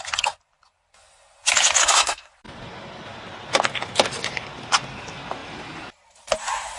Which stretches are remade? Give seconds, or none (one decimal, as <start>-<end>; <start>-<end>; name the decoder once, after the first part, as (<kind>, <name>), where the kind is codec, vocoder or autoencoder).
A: 1.8-2.3 (codec, SNAC)